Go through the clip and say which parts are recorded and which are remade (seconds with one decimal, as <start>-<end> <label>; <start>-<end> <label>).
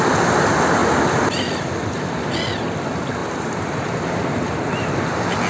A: 0.0-0.8 recorded; 0.8-1.4 remade; 1.4-3.2 recorded; 3.2-4.1 remade; 4.1-5.5 recorded